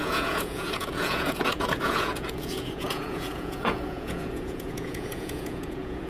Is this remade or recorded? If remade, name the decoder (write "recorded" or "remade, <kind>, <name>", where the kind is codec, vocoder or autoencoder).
remade, vocoder, Vocos